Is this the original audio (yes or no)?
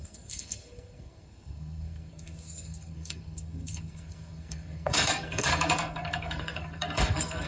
no